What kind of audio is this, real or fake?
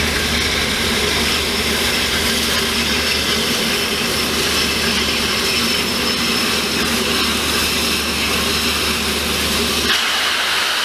real